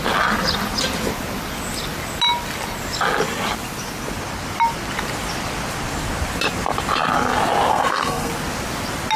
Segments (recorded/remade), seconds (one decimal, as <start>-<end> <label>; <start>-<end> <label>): 0.0-7.7 recorded; 7.7-8.3 remade; 8.3-9.2 recorded